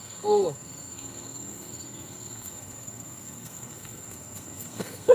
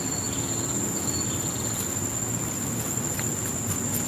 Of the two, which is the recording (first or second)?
second